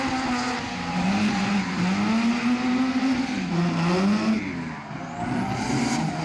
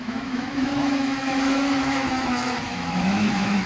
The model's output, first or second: second